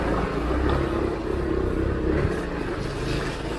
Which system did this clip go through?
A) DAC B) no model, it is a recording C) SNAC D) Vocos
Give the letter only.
B